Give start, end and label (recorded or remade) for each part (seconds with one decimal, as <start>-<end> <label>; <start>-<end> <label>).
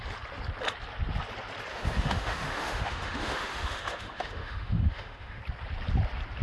0.0-1.7 recorded; 1.7-5.4 remade; 5.4-6.4 recorded